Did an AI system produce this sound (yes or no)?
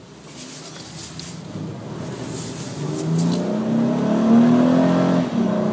no